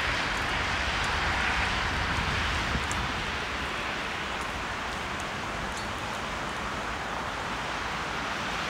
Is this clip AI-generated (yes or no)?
no